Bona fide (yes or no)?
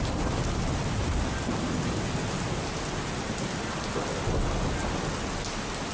yes